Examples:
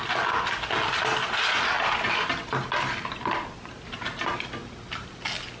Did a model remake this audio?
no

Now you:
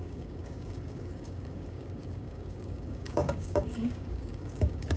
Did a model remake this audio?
yes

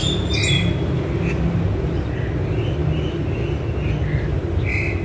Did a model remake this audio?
no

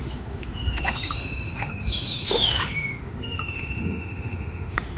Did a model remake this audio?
yes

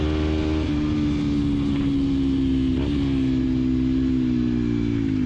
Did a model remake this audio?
no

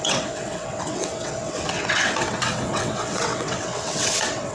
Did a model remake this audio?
yes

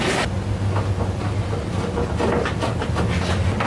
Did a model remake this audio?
no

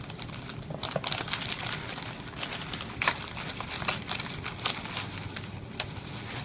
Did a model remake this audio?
no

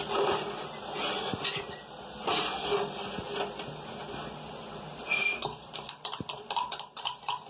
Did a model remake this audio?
no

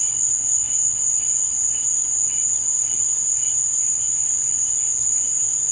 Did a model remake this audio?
no